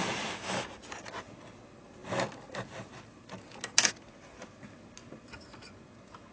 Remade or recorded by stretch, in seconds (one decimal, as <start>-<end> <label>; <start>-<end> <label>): 0.0-6.3 recorded